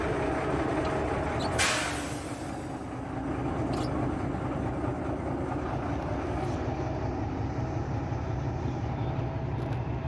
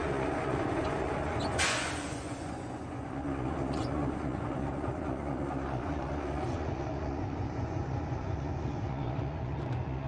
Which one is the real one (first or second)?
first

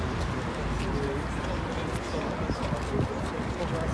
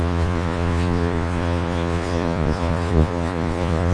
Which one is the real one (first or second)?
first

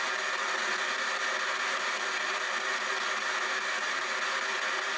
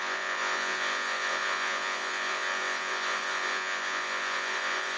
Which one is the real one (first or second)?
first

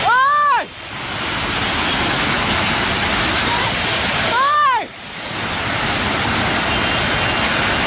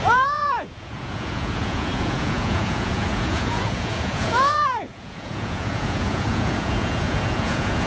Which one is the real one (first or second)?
first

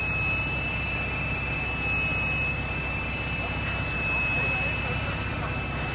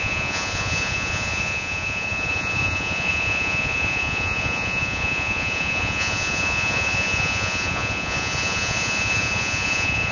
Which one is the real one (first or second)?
first